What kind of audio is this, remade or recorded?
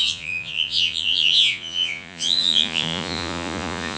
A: remade